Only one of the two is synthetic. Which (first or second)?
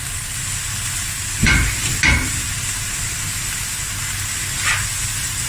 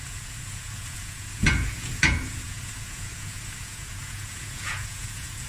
second